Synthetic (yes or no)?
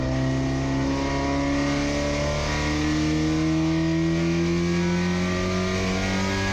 no